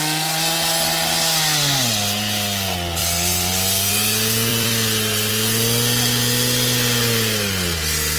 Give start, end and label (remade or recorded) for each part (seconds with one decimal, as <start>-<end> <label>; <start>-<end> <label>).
0.0-3.0 recorded; 3.0-3.9 remade; 3.9-4.5 recorded; 4.5-5.3 remade; 5.3-8.2 recorded